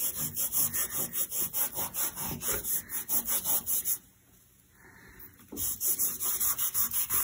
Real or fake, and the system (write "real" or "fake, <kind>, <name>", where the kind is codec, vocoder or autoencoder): real